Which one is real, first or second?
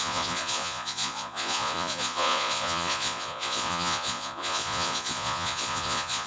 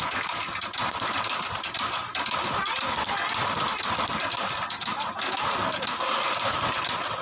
second